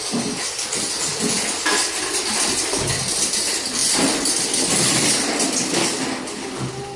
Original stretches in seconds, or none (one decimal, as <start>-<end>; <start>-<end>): 0.0-7.0